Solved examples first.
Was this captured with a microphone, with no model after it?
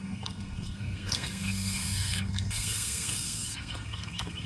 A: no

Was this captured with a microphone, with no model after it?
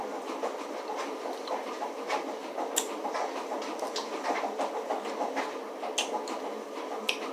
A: yes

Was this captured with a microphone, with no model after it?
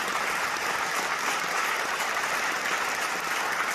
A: yes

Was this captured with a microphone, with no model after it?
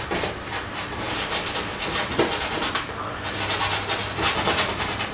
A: yes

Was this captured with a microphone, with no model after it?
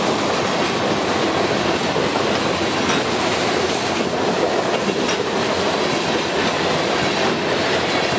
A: yes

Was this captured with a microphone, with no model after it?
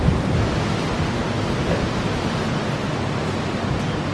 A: yes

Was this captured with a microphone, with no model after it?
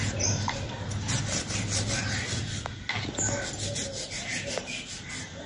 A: yes